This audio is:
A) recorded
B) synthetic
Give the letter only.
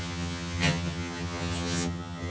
B